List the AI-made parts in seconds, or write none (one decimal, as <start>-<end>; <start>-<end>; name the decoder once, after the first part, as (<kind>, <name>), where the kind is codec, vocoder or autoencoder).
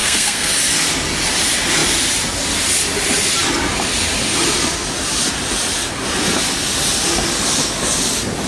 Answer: 0.0-0.5 (codec, SNAC)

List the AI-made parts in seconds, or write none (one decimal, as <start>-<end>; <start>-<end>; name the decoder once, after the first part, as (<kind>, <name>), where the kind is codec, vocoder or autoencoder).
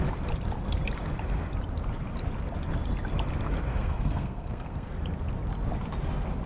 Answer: 3.7-4.9 (codec, SNAC)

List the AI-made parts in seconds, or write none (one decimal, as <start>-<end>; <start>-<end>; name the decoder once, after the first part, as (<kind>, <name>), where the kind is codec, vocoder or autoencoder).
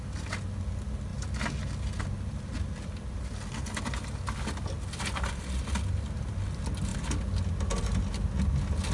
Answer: none